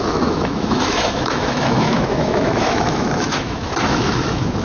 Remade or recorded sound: remade